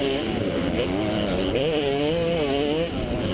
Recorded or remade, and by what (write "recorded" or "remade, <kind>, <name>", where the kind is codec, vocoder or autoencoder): recorded